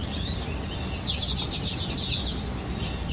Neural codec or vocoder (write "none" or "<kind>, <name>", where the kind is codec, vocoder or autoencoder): none